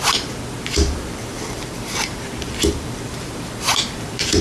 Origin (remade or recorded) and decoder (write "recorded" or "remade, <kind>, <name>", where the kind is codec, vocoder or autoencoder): remade, vocoder, BigVGAN v2